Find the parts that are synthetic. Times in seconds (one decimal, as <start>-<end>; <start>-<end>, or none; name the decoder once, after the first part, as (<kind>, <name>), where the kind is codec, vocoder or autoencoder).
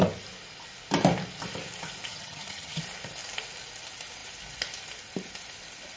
2.1-2.8 (vocoder, HiFi-GAN)